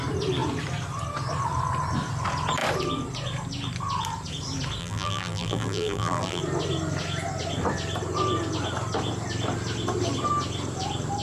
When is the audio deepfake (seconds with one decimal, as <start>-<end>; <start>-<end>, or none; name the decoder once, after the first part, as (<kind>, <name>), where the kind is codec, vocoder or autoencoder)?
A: 4.8-6.4 (vocoder, BigVGAN v2)